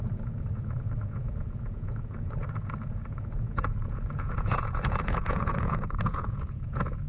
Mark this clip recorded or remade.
remade